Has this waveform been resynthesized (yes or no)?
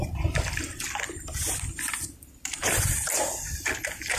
no